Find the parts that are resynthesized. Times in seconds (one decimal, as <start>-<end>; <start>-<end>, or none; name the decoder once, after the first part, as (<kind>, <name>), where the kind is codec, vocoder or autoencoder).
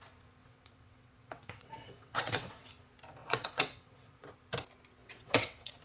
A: 0.4-2.7 (vocoder, WaveNeXt); 3.2-4.3; 5.0-5.8